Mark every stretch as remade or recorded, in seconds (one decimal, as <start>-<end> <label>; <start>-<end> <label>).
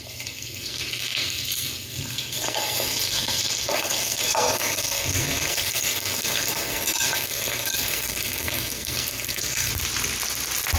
0.0-9.7 remade; 9.7-10.8 recorded